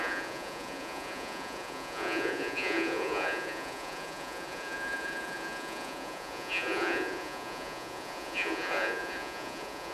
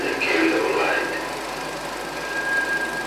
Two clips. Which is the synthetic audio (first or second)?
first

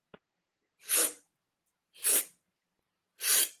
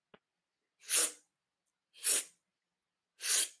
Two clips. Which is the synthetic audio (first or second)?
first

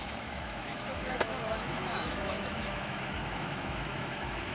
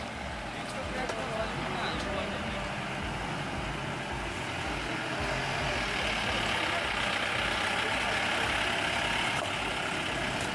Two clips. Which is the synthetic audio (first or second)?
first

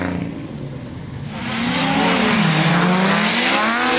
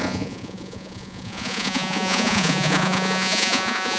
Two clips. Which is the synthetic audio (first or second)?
second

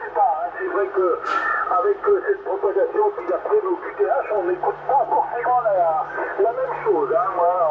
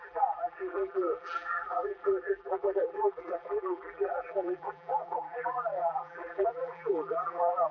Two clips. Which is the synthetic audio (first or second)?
second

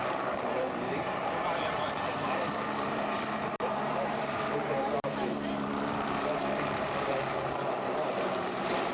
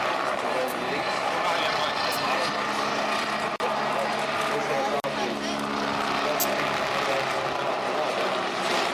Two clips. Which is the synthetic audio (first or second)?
first